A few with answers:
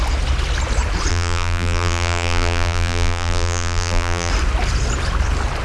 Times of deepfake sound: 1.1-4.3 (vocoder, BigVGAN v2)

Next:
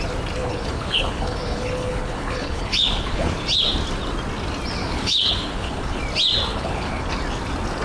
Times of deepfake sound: 0.4-3.3 (codec, HILCodec); 4.8-6.0; 6.5-7.1

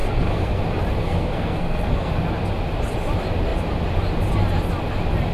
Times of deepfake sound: 0.0-0.6 (codec, SNAC); 1.0-2.1

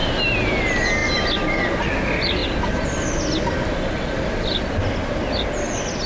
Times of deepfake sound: none

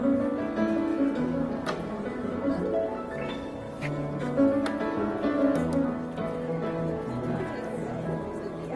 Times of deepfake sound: 0.9-2.6 (vocoder, BigVGAN v2); 6.2-8.8

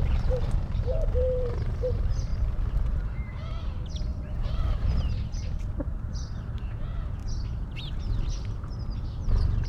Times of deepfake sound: 0.0-2.3 (vocoder, BigVGAN v2); 2.9-7.2; 8.3-9.7

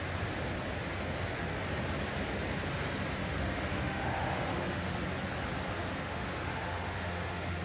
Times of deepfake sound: 3.2-5.0 (autoencoder, DAC-VAE); 5.8-7.6